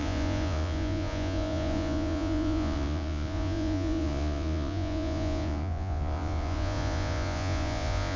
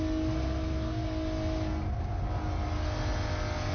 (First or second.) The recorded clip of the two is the second